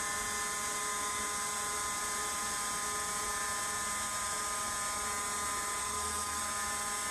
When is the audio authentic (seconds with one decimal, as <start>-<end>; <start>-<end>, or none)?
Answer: 0.0-5.8; 6.4-7.1